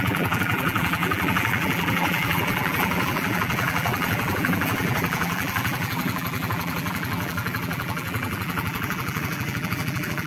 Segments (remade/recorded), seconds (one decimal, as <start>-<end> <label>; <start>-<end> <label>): 0.0-10.3 remade